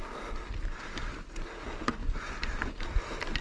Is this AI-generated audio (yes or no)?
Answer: no